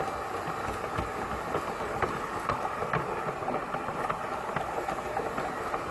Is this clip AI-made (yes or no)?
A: no